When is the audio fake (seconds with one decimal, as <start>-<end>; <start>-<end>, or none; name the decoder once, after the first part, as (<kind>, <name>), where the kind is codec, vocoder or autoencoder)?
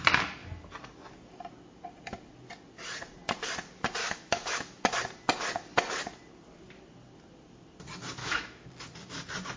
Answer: 4.0-4.9 (autoencoder, DAC-VAE); 8.2-8.7